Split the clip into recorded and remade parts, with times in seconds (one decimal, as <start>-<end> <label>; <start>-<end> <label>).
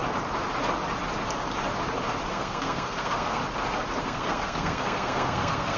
0.0-2.3 recorded; 2.3-3.4 remade; 3.4-4.0 recorded; 4.0-5.8 remade